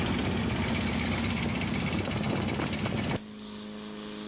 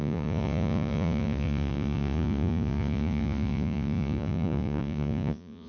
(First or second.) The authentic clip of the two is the first